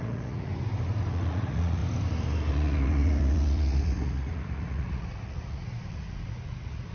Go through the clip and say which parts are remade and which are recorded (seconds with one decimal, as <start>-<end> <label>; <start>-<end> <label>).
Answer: 0.0-0.5 remade; 0.5-1.1 recorded; 1.1-1.8 remade; 1.8-2.5 recorded; 2.5-6.9 remade